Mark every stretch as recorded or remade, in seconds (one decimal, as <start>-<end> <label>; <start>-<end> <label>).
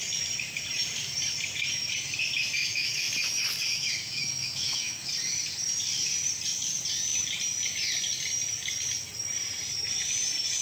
0.0-2.6 recorded; 2.6-3.1 remade; 3.1-3.7 recorded; 3.7-5.1 remade; 5.1-10.6 recorded